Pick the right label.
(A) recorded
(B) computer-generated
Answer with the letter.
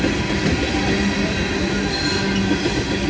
A